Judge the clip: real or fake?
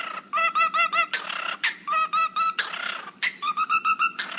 real